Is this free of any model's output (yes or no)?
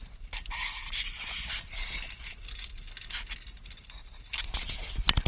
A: yes